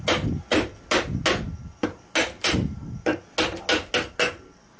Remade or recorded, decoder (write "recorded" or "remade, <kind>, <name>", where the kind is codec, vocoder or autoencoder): recorded